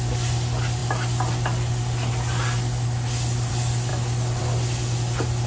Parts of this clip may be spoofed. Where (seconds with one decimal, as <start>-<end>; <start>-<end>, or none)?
none